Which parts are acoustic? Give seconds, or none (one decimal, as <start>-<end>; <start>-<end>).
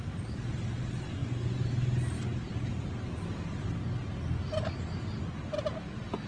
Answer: 0.0-1.2; 1.7-6.3